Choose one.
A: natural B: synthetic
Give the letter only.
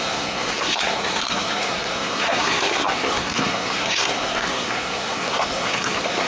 B